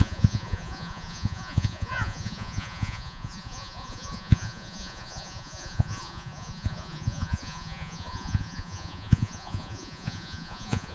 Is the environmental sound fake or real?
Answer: fake